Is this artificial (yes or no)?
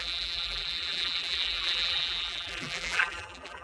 yes